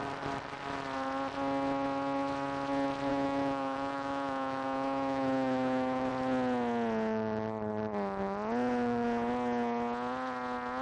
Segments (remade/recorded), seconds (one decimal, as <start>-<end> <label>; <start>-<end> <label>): 0.0-3.1 recorded; 3.1-6.1 remade; 6.1-10.8 recorded